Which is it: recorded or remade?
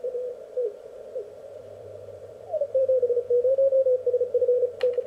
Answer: remade